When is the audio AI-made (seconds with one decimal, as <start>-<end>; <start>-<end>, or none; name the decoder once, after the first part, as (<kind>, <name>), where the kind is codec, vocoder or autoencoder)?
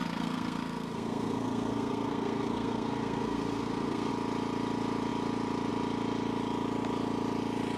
0.0-4.1 (codec, SNAC)